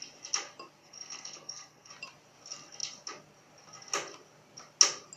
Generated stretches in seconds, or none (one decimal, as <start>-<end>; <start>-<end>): 0.8-1.9